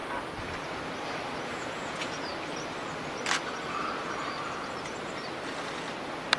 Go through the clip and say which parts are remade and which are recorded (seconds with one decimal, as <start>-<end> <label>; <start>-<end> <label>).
0.0-1.4 recorded; 1.4-2.3 remade; 2.3-6.4 recorded

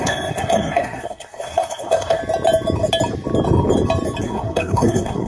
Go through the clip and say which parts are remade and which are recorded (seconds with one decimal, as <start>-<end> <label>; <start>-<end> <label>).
0.0-2.2 remade; 2.2-4.2 recorded; 4.2-5.3 remade

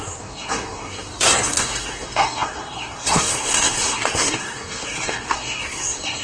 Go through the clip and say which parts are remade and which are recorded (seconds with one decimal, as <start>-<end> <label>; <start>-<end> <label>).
0.0-6.2 remade

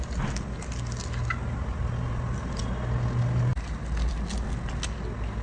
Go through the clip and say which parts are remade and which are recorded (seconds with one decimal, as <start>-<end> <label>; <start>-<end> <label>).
0.0-5.4 recorded

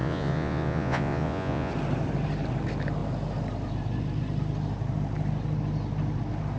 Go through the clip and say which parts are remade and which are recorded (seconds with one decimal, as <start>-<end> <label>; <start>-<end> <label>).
0.0-1.7 remade; 1.7-6.6 recorded